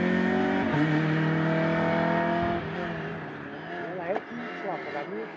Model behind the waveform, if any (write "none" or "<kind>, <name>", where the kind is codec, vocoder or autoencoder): none